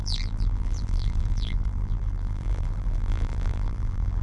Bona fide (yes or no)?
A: no